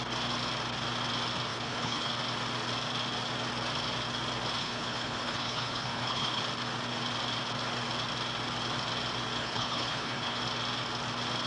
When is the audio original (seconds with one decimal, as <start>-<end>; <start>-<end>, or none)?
0.0-1.5; 2.1-4.6; 6.4-9.4; 10.4-11.5